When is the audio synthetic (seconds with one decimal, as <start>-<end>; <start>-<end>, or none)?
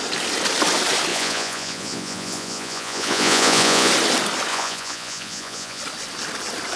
1.1-3.9; 4.5-5.8